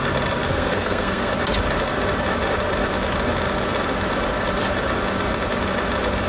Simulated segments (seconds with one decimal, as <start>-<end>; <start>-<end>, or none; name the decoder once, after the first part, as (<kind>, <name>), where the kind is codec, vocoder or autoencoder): 0.5-1.3 (codec, SNAC)